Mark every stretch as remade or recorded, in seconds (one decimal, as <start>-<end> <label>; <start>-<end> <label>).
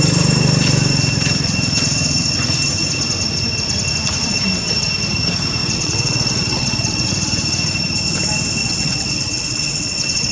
0.0-5.6 recorded; 5.6-7.1 remade; 7.1-8.6 recorded; 8.6-10.3 remade